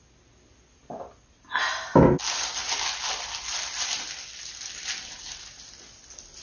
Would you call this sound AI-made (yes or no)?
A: no